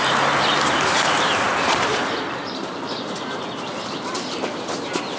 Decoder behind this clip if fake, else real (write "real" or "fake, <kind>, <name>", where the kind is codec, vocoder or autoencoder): fake, vocoder, BigVGAN v2